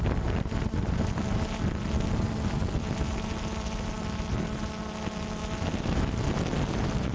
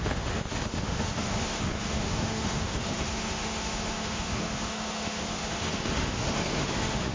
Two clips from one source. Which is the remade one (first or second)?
second